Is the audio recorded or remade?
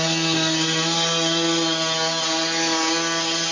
recorded